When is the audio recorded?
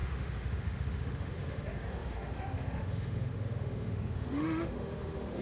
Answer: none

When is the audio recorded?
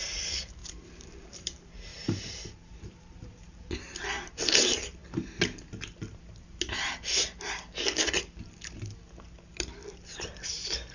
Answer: 5.0-9.9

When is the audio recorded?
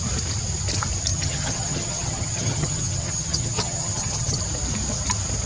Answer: 0.0-1.1; 4.4-5.5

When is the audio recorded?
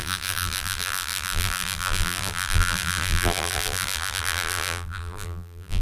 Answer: none